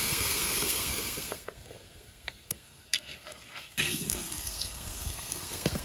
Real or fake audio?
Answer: fake